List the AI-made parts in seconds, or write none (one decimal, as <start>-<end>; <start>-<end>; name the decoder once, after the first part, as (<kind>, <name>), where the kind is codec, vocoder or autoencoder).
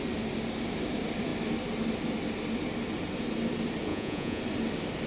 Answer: 3.9-4.4 (vocoder, Vocos)